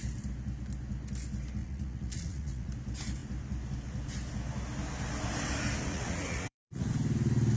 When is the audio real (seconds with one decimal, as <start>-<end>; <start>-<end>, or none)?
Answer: 0.0-1.6; 2.7-5.9; 6.9-7.6